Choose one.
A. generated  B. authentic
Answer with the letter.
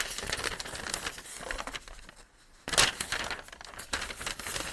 B